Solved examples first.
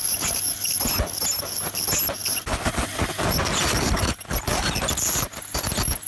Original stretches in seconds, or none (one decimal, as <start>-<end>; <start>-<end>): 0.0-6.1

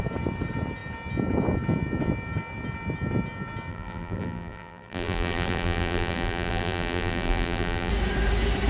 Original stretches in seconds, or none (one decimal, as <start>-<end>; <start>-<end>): 0.0-3.7; 7.9-8.7

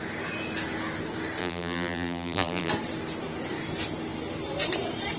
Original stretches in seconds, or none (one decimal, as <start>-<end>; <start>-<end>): 0.0-1.4; 2.7-5.2